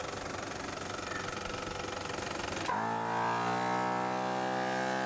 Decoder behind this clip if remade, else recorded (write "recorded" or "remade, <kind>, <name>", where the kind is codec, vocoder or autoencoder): recorded